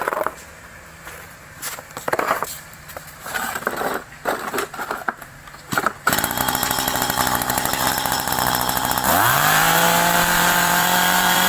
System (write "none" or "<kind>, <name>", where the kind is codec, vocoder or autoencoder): vocoder, BigVGAN v2